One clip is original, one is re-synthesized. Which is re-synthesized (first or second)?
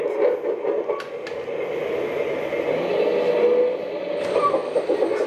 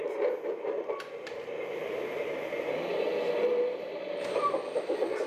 second